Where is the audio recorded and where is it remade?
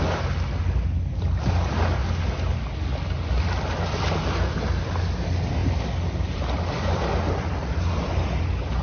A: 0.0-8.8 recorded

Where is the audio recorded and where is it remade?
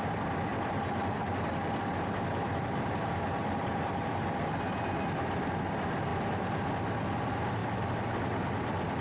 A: 0.0-6.1 recorded; 6.1-6.7 remade; 6.7-9.0 recorded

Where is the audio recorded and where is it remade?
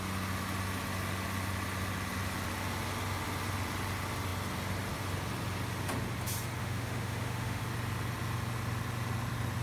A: 0.0-6.6 recorded; 6.6-7.6 remade; 7.6-9.6 recorded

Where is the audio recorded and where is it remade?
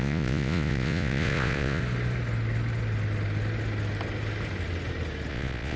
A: 0.0-1.8 remade; 1.8-5.3 recorded; 5.3-5.8 remade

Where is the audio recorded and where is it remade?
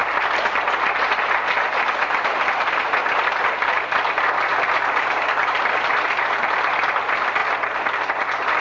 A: 0.0-8.6 recorded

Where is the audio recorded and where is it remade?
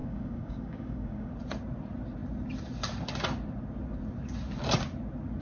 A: 0.0-1.3 remade; 1.3-5.4 recorded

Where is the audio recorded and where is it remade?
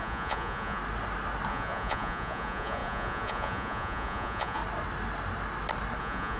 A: 0.0-0.8 remade; 0.8-1.5 recorded; 1.5-4.6 remade; 4.6-6.0 recorded; 6.0-6.4 remade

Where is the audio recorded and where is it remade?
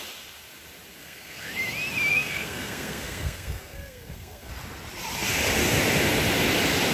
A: 0.0-1.0 recorded; 1.0-1.5 remade; 1.5-2.1 recorded; 2.1-4.5 remade; 4.5-6.9 recorded